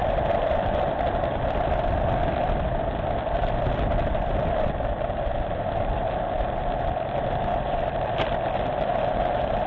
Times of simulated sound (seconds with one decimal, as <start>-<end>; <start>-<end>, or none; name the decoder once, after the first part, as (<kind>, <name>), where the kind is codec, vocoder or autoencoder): 0.0-2.7 (vocoder, BigVGAN v2); 7.5-8.1